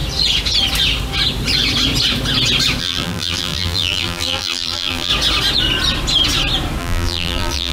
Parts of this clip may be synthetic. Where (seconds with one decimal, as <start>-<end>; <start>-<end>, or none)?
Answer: 2.8-5.1; 6.8-7.7